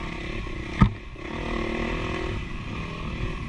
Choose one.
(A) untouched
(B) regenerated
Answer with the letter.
A